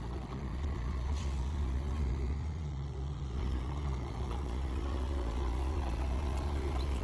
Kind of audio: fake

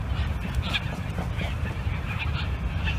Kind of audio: real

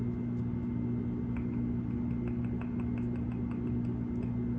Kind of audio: real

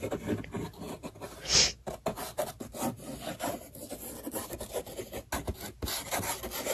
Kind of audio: real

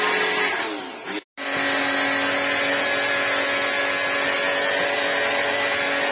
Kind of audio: real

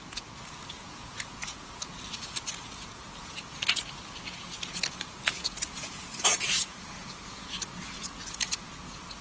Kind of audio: fake